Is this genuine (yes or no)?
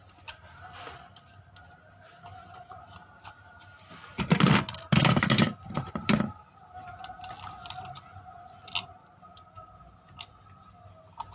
yes